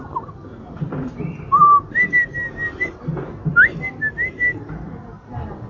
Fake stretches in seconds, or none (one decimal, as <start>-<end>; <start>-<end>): none